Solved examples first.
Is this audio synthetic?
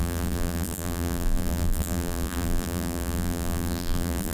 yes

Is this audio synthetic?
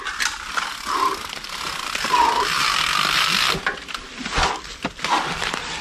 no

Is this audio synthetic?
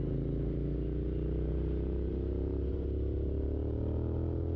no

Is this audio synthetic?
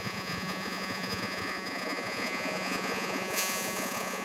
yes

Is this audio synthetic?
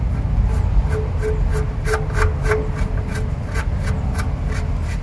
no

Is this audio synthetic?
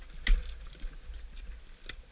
no